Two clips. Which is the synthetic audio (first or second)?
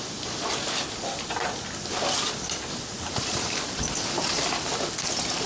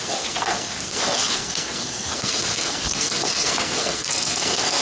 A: second